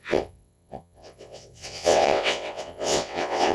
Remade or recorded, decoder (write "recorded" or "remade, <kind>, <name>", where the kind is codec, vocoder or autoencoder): remade, vocoder, WaveNeXt